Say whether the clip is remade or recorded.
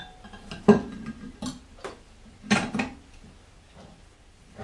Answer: recorded